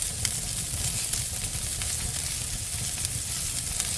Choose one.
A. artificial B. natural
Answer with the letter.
B